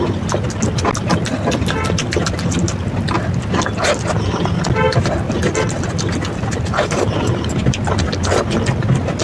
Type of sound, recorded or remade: recorded